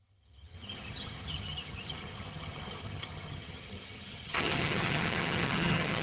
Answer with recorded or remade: remade